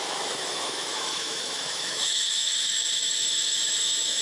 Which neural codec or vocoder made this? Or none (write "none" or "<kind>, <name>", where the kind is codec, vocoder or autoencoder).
autoencoder, DAC-VAE